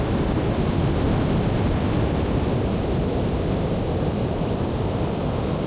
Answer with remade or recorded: recorded